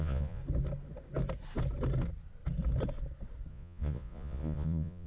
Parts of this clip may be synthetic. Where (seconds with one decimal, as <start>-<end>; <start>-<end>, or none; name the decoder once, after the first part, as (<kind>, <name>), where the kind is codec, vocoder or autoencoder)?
0.0-0.4 (vocoder, Vocos); 3.5-5.1

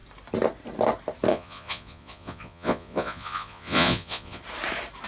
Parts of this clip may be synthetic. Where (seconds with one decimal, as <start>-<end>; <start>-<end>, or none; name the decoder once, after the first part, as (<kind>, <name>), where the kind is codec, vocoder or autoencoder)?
1.3-4.4 (vocoder, Vocos)

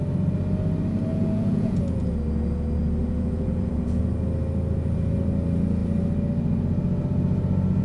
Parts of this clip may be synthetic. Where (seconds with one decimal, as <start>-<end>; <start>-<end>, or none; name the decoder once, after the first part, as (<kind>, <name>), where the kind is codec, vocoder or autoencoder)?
1.1-2.1 (vocoder, Vocos); 3.0-4.0